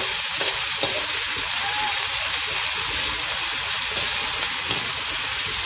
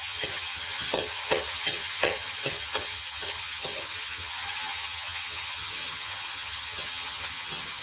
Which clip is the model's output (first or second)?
second